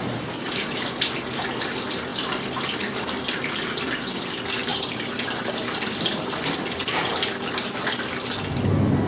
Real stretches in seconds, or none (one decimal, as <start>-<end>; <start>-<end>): 0.0-2.1; 2.8-4.7; 7.3-9.1